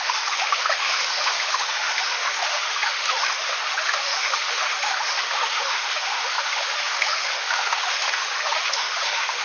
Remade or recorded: remade